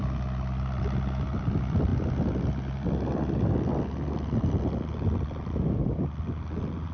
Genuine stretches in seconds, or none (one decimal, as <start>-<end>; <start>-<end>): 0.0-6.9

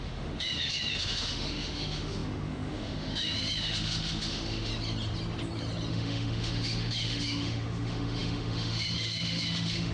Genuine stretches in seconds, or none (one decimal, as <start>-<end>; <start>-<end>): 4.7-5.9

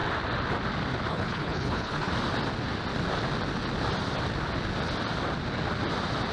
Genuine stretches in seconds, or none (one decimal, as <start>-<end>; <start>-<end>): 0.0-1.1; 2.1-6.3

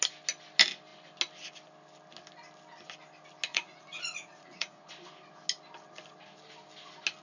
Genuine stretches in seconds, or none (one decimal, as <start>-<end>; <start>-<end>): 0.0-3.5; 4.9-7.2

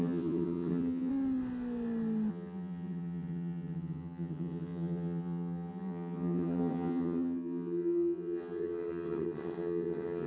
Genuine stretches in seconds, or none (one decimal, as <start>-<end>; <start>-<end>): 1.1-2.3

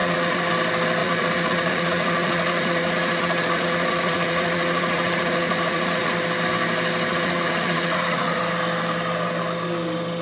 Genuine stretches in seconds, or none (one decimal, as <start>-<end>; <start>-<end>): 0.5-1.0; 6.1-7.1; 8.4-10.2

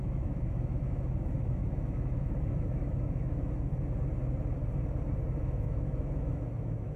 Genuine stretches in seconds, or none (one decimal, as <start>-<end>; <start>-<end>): 3.7-5.4